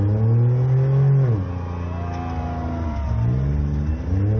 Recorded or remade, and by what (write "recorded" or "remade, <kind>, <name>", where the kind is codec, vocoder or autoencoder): recorded